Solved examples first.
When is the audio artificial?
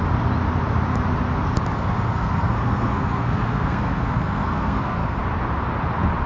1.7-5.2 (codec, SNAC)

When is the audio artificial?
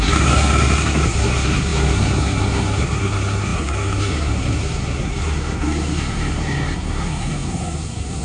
0.0-8.2 (codec, SNAC)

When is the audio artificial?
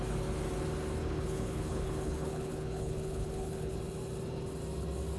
1.0-3.7 (codec, HILCodec)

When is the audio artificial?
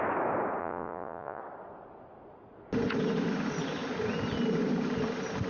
0.6-1.4 (vocoder, Vocos)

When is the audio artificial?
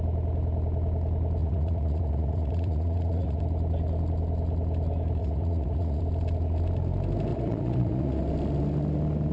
1.4-3.4 (vocoder, Vocos); 5.2-6.0; 7.3-8.2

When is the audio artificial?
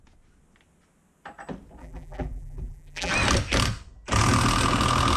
1.8-3.1 (vocoder, BigVGAN v2)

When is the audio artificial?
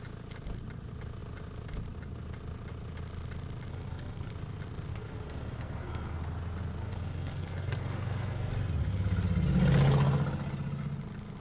3.7-4.3 (codec, SNAC); 4.9-6.2; 6.8-8.5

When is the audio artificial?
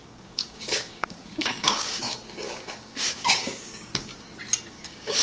0.0-4.1 (codec, DAC); 4.7-5.2